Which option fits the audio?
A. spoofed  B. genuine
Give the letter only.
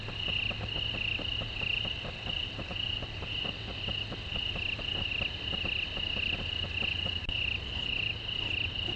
B